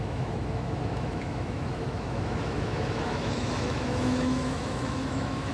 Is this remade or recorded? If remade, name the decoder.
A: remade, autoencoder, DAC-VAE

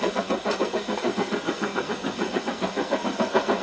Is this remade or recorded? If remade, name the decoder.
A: remade, codec, SNAC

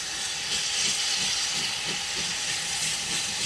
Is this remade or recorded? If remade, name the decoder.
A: recorded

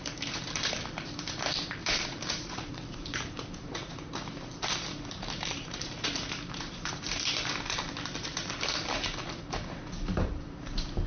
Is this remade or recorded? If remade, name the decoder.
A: remade, vocoder, BigVGAN v2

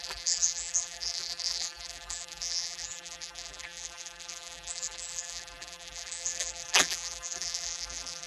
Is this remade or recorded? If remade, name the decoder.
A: remade, vocoder, BigVGAN v2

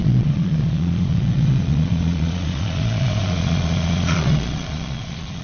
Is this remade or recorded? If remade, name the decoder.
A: remade, vocoder, Vocos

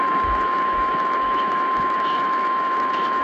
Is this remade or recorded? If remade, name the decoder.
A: remade, autoencoder, DAC-VAE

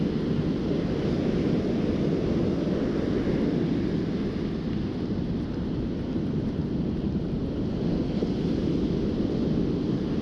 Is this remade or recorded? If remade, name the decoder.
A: recorded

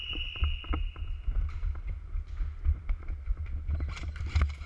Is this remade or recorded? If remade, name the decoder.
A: recorded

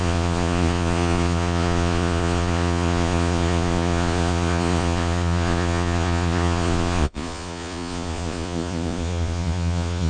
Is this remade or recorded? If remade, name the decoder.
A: remade, vocoder, Vocos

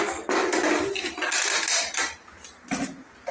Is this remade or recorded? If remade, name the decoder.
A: recorded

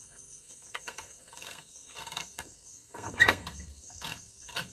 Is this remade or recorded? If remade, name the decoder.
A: remade, codec, SNAC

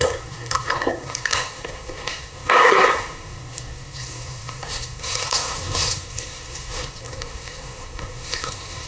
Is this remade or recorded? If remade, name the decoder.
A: remade, codec, SNAC